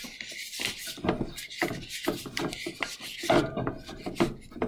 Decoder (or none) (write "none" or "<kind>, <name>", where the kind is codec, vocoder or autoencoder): none